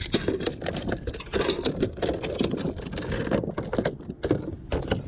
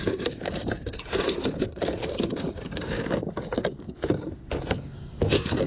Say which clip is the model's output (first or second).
second